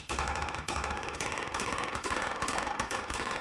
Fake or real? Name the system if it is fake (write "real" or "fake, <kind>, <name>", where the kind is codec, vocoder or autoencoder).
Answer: fake, autoencoder, DAC-VAE